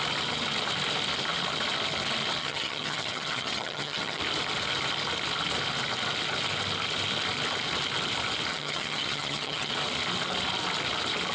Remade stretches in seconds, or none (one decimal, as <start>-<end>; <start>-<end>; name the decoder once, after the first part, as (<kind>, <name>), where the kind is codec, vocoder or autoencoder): 2.4-4.2 (vocoder, HiFi-GAN); 8.5-9.7